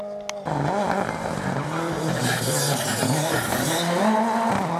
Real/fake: real